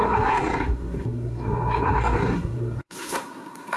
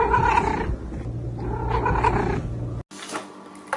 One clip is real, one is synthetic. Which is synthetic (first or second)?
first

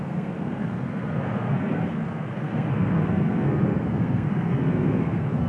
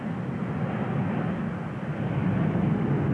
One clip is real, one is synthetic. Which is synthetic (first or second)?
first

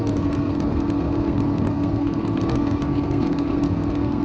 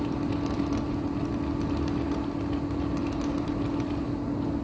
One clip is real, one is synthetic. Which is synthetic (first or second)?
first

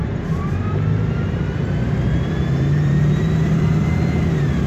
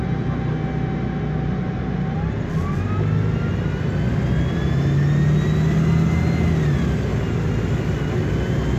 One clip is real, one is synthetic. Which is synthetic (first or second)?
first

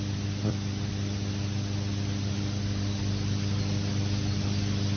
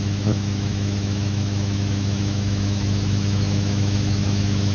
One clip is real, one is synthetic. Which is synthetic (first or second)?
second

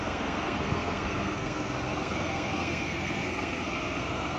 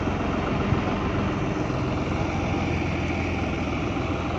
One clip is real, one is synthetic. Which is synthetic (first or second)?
first